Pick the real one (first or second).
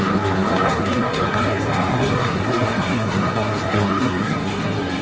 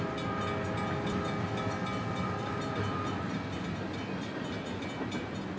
second